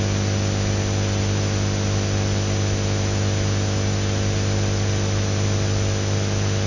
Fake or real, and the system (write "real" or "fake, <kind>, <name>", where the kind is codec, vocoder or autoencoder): real